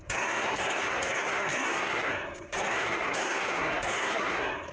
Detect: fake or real fake